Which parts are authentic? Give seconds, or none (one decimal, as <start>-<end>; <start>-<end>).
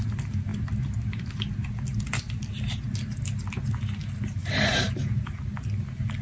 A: 0.0-4.4; 5.3-6.2